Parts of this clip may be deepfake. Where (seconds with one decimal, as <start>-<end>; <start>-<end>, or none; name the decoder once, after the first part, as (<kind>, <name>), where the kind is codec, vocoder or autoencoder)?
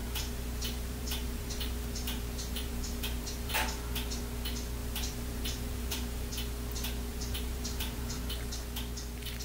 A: 0.0-3.5 (vocoder, BigVGAN v2); 4.8-6.3; 7.1-8.2